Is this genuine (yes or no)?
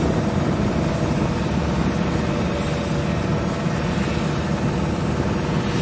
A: yes